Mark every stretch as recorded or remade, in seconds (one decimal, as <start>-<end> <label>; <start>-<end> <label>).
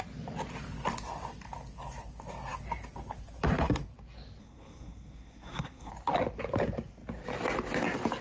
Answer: 0.0-4.4 recorded; 4.4-5.9 remade; 5.9-8.2 recorded